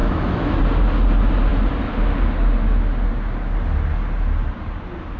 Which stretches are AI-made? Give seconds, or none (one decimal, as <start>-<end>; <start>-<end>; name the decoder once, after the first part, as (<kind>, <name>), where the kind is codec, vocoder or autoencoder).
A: 0.0-0.6 (autoencoder, DAC-VAE)